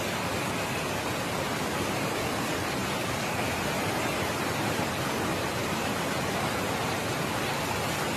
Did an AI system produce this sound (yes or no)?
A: no